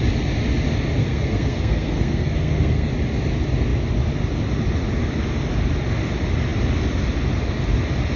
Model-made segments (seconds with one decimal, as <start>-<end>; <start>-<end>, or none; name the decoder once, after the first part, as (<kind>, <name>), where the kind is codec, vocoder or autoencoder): 1.0-2.9 (codec, SNAC)